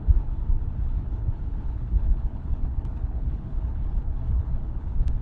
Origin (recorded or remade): remade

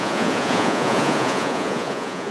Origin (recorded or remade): remade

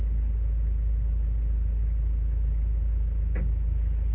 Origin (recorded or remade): recorded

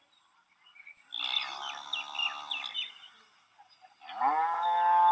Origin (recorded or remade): recorded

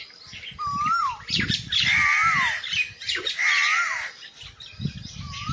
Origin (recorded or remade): recorded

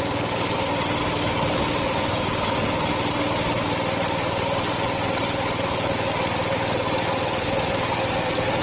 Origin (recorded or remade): recorded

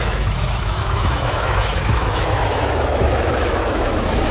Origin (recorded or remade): remade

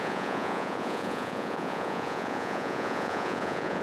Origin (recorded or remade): remade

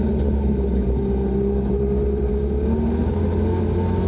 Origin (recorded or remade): recorded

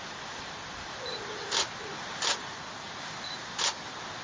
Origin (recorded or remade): recorded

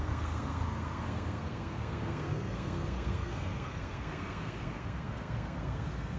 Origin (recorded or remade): remade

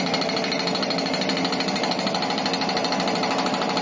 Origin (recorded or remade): recorded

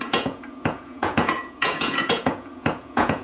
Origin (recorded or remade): remade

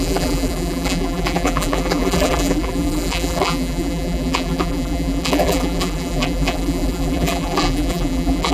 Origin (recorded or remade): remade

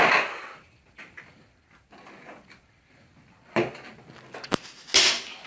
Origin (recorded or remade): recorded